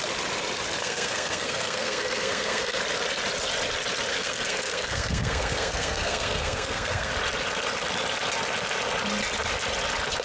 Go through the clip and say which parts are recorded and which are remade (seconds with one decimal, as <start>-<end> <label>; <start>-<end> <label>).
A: 0.0-0.8 recorded; 0.8-2.8 remade; 2.8-4.1 recorded; 4.1-7.1 remade; 7.1-10.2 recorded

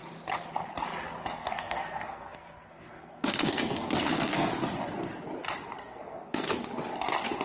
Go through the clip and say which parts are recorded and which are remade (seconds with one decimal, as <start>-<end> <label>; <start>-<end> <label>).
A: 0.0-1.4 recorded; 1.4-4.5 remade; 4.5-5.8 recorded; 5.8-6.6 remade; 6.6-7.4 recorded

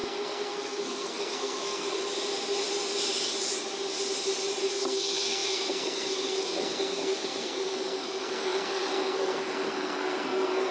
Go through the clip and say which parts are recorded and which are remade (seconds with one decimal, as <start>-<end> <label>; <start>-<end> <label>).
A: 0.0-2.0 remade; 2.0-4.7 recorded; 4.7-10.7 remade

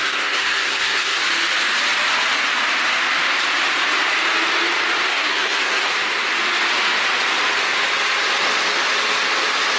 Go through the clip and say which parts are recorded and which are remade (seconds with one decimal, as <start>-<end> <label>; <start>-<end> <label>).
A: 0.0-1.2 remade; 1.2-5.1 recorded; 5.1-5.9 remade; 5.9-9.8 recorded

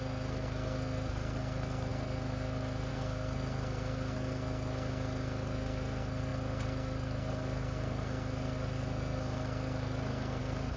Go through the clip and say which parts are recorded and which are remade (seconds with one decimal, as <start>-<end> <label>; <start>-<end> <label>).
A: 0.0-10.8 remade

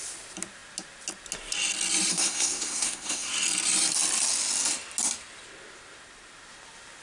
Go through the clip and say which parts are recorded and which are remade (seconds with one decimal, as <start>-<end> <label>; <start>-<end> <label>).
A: 0.0-2.1 recorded; 2.1-3.3 remade; 3.3-7.0 recorded